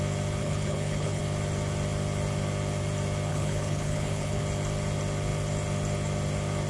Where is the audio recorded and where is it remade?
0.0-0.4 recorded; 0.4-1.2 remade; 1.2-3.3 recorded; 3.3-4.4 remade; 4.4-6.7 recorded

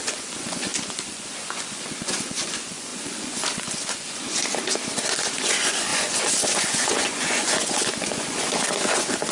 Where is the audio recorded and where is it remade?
0.0-4.4 remade; 4.4-5.2 recorded; 5.2-9.3 remade

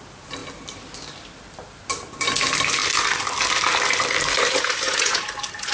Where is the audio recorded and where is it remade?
0.0-2.8 remade; 2.8-5.3 recorded; 5.3-5.7 remade

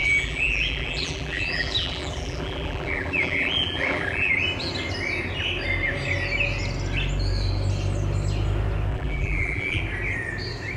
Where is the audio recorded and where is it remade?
0.0-4.3 remade; 4.3-8.9 recorded; 8.9-9.8 remade; 9.8-10.8 recorded

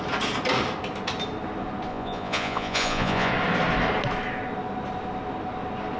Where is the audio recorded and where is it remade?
0.0-1.9 recorded; 1.9-3.3 remade; 3.3-6.0 recorded

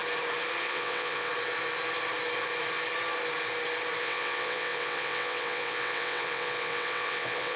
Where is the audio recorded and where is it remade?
0.0-0.6 recorded; 0.6-1.3 remade; 1.3-4.0 recorded; 4.0-7.6 remade

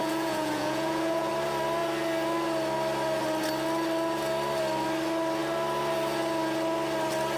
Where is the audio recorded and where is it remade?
0.0-1.3 remade; 1.3-7.4 recorded